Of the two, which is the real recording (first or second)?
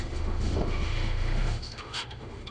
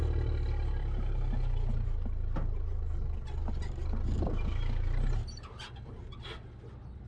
second